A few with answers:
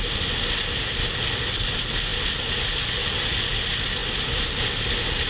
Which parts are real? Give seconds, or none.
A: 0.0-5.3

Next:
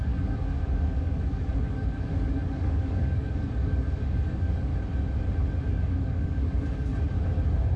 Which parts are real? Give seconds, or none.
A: 4.7-5.7; 6.9-7.8

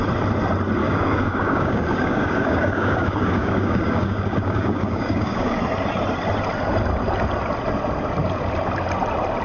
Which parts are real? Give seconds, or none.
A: 0.0-0.8; 5.6-9.4

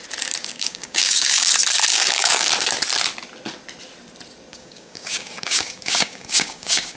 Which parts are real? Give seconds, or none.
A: 0.0-0.4; 1.5-1.9; 2.5-4.5

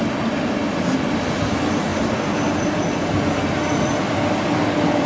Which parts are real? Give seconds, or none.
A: 0.0-5.1

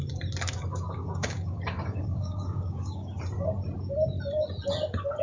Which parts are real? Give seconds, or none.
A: 0.0-0.7; 3.2-5.2

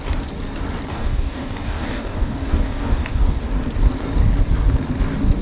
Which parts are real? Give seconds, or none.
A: 0.0-0.9; 3.4-5.4